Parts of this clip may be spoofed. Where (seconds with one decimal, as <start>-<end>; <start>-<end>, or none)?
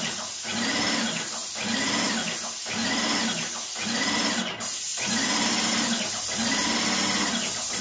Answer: 4.9-5.7